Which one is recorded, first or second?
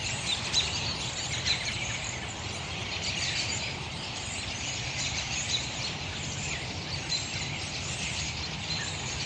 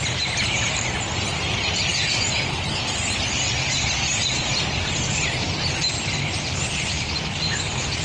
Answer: second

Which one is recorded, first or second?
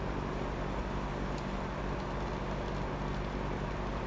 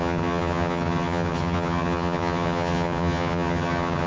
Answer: first